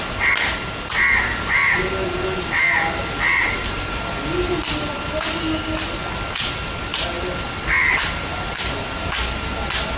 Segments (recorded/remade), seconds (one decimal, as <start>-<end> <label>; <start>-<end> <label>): 0.0-10.0 recorded